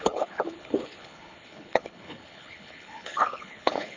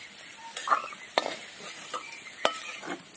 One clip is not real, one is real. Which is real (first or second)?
second